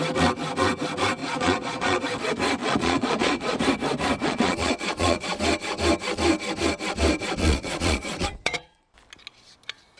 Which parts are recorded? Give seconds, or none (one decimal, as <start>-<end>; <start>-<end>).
0.0-1.2; 2.0-2.6; 3.6-4.2; 5.4-7.4; 8.9-10.0